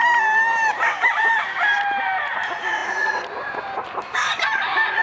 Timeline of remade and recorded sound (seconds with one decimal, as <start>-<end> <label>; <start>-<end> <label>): 0.0-0.5 recorded; 0.5-1.3 remade; 1.3-5.0 recorded